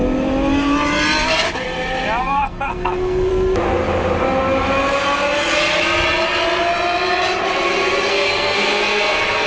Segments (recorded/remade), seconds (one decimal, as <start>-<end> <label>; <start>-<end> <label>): 0.0-2.2 recorded; 2.2-3.3 remade; 3.3-8.1 recorded; 8.1-9.5 remade